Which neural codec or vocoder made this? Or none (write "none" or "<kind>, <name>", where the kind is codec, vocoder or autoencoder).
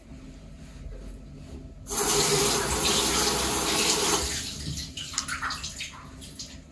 none